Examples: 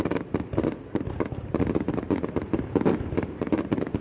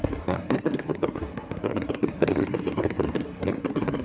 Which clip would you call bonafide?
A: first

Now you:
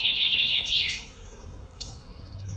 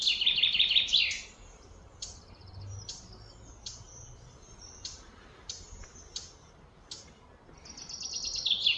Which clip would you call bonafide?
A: second